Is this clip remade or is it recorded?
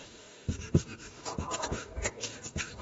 remade